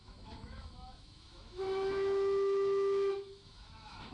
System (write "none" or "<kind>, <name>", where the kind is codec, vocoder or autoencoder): autoencoder, DAC-VAE